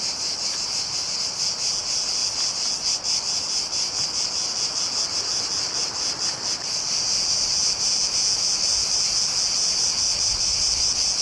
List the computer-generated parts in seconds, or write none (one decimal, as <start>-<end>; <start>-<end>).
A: none